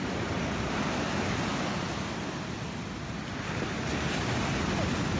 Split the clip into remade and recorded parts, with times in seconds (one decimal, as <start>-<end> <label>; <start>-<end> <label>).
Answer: 0.0-5.2 recorded